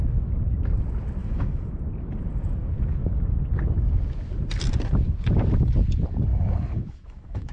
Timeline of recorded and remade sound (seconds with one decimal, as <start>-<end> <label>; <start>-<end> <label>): 0.0-1.2 recorded; 1.2-1.8 remade; 1.8-6.3 recorded; 6.3-7.5 remade

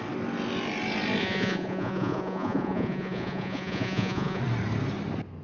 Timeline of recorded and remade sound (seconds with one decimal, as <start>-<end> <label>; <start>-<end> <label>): 0.0-1.2 recorded; 1.2-4.4 remade; 4.4-5.4 recorded

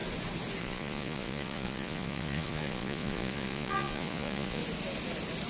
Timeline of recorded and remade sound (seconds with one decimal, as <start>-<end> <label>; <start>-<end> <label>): 0.0-0.6 recorded; 0.6-4.6 remade; 4.6-5.5 recorded

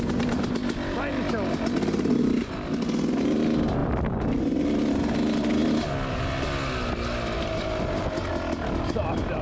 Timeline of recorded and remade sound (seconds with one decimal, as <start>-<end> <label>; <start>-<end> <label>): 0.0-9.4 recorded

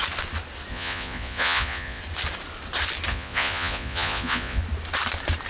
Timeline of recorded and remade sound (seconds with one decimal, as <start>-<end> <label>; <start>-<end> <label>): 0.0-0.7 recorded; 0.7-2.0 remade; 2.0-3.1 recorded; 3.1-4.6 remade; 4.6-5.5 recorded